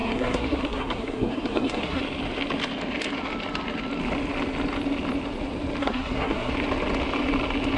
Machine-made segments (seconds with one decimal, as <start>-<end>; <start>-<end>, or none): 0.0-2.0; 5.8-6.5